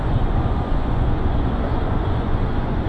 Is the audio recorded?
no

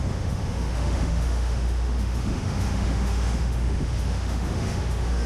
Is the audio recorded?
no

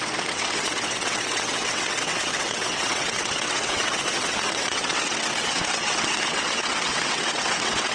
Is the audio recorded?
no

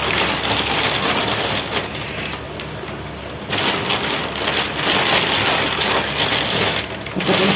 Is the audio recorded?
yes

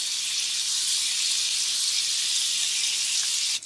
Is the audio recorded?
yes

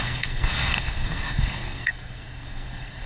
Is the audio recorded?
no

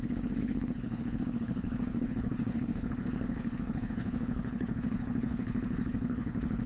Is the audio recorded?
no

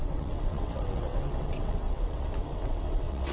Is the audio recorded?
no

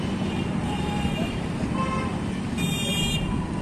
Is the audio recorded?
yes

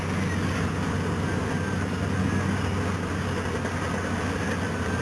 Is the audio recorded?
yes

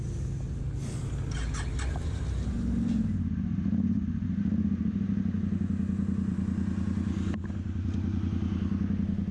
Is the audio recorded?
yes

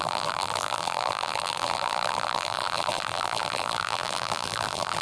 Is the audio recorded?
no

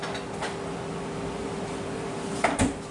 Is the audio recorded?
yes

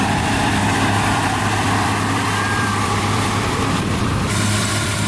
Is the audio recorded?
no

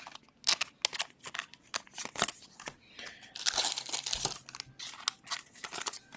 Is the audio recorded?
yes